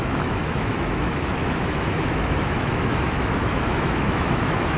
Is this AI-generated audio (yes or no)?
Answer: yes